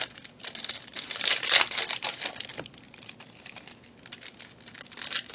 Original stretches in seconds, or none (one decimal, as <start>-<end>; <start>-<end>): 0.0-5.3